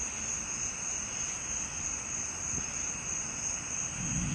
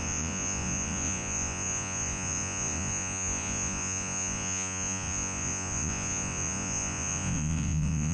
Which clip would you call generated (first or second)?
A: second